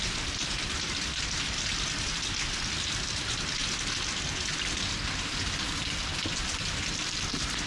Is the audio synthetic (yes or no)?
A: no